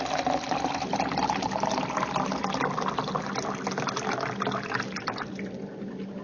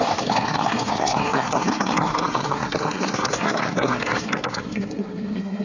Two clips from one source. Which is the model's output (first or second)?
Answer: second